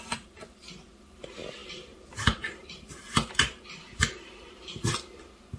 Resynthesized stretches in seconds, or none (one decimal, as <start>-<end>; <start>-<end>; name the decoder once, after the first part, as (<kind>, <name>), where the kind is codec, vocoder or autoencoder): 1.6-3.8 (vocoder, BigVGAN v2)